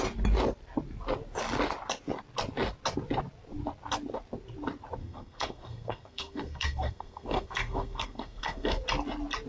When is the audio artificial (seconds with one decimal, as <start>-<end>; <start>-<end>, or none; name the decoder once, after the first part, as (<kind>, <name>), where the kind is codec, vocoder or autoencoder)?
5.0-8.8 (codec, SNAC)